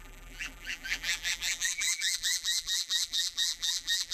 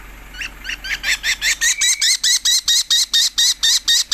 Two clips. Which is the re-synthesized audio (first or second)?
first